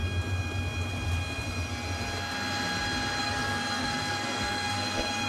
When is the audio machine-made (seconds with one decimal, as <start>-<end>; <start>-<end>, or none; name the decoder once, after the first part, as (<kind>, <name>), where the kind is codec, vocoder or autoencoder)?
3.2-5.3 (codec, SNAC)